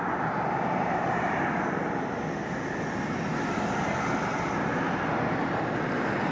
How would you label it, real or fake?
real